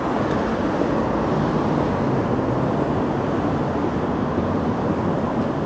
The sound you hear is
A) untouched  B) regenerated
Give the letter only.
A